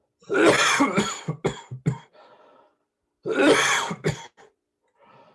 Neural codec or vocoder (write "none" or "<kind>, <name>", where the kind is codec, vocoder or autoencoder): none